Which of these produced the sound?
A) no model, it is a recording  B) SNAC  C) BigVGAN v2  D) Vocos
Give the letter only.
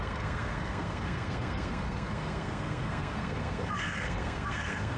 B